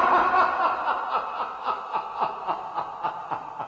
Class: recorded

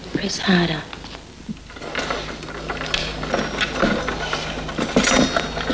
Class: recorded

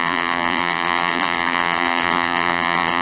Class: remade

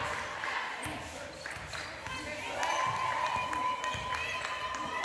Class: recorded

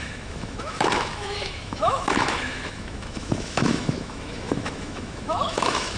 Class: remade